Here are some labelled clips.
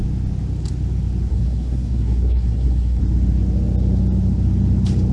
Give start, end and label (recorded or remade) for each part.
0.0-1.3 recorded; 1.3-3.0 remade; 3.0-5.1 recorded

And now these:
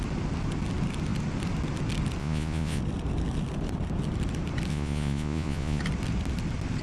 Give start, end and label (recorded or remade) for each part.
0.0-2.2 recorded; 2.2-2.8 remade; 2.8-4.7 recorded; 4.7-5.8 remade; 5.8-6.8 recorded

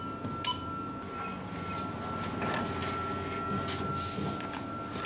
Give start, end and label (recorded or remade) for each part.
0.0-5.1 recorded

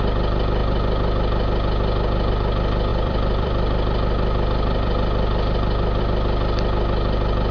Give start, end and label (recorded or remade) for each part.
0.0-2.9 recorded; 2.9-6.0 remade; 6.0-7.5 recorded

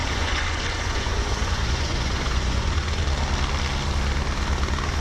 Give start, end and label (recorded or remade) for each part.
0.0-3.0 remade; 3.0-5.0 recorded